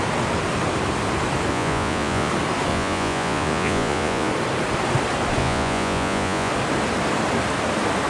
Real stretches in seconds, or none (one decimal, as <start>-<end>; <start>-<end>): 0.0-1.5; 2.3-2.7; 4.3-5.4; 6.5-8.1

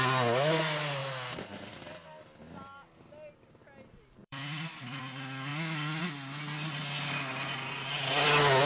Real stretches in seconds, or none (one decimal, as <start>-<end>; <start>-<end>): 0.0-4.2; 5.0-8.7

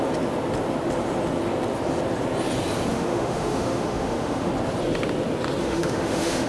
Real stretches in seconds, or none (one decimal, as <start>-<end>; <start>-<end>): 0.0-2.9; 4.5-5.6